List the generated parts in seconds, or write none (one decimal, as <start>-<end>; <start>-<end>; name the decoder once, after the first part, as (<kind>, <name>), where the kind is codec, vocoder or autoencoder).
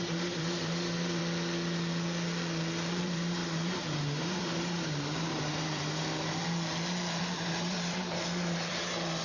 0.0-1.2 (vocoder, BigVGAN v2); 3.0-6.4; 7.2-9.2